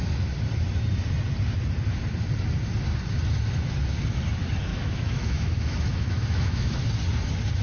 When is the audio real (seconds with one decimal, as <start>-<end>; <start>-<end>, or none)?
0.0-4.7; 6.8-7.6